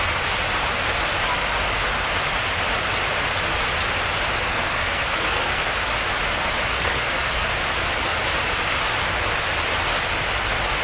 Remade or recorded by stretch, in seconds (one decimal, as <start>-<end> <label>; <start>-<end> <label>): 0.0-4.5 recorded; 4.5-5.7 remade; 5.7-6.7 recorded; 6.7-7.5 remade; 7.5-10.8 recorded